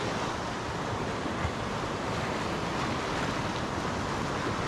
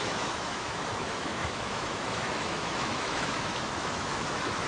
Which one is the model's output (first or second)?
second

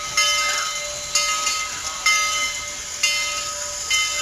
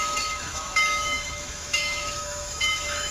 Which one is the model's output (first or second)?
second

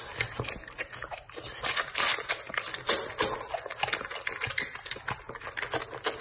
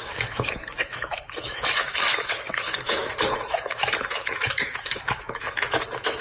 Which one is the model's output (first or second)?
second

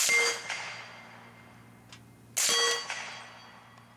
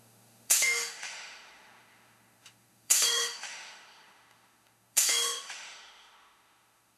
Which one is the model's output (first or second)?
second